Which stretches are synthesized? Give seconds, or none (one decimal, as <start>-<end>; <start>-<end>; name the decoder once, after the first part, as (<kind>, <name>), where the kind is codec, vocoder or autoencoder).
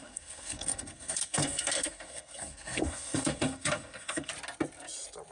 0.0-4.3 (codec, SNAC)